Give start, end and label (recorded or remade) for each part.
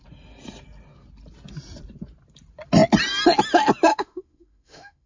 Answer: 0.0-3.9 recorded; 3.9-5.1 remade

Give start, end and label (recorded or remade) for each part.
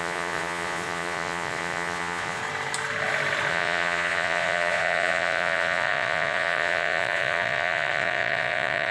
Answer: 0.0-2.4 remade; 2.4-3.5 recorded; 3.5-8.9 remade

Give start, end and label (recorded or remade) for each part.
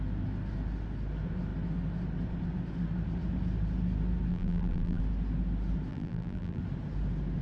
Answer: 0.0-4.3 recorded; 4.3-5.0 remade; 5.0-5.9 recorded; 5.9-6.6 remade; 6.6-7.4 recorded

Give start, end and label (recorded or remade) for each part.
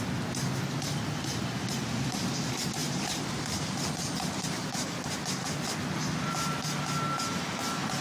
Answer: 0.0-2.8 recorded; 2.8-6.6 remade; 6.6-8.0 recorded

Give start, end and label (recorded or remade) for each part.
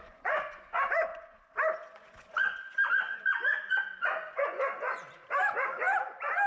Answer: 0.0-5.2 remade; 5.2-6.5 recorded